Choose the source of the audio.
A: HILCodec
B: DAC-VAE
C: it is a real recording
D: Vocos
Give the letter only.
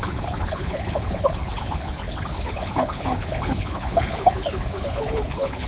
A